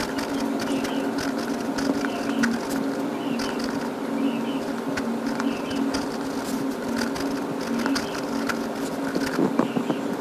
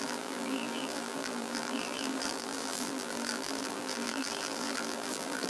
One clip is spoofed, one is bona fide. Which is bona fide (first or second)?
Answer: first